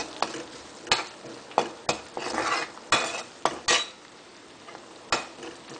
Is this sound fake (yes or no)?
no